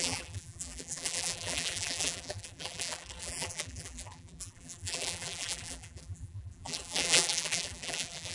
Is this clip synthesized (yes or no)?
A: yes